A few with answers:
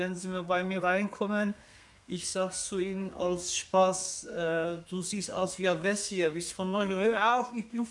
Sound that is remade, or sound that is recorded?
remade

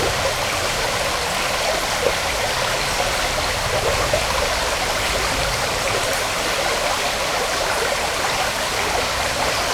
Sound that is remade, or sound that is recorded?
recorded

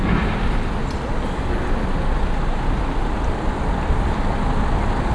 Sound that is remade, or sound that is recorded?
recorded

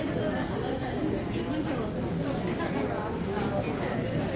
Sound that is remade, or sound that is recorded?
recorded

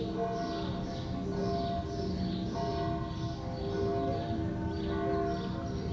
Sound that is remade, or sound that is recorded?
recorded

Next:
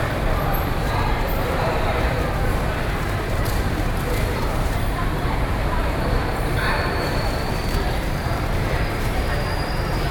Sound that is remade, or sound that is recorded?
remade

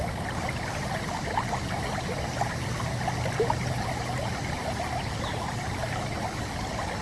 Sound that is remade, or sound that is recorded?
recorded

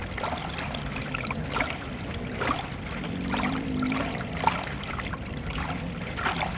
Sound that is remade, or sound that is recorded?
recorded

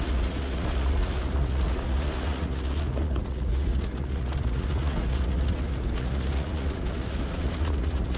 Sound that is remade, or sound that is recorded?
remade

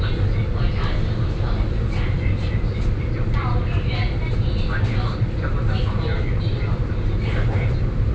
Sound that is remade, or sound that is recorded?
recorded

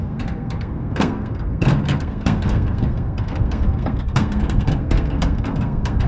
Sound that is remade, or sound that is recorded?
remade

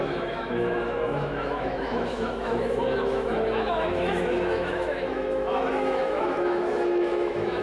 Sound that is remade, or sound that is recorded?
remade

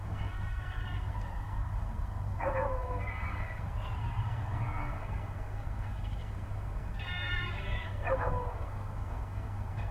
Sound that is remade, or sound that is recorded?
remade